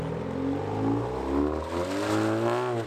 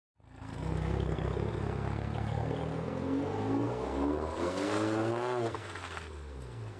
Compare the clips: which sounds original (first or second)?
first